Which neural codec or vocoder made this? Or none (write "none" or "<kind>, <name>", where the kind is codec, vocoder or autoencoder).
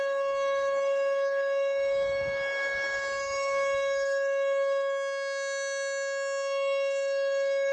autoencoder, DAC-VAE